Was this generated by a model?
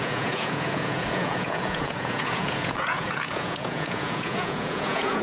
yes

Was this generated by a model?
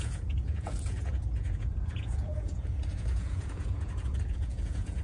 yes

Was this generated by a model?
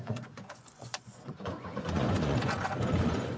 yes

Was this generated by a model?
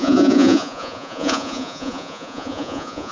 yes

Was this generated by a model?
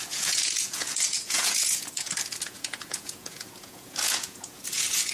yes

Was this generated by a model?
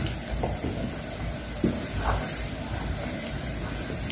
no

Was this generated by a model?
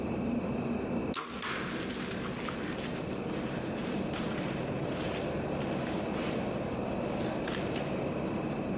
no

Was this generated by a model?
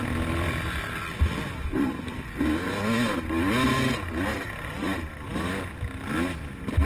no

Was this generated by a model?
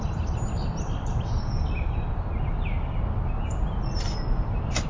no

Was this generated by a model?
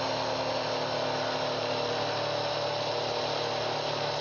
no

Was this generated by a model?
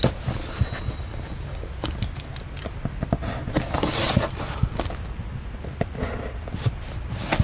no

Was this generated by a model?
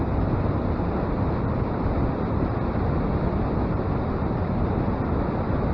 no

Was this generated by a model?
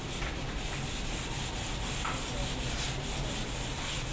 no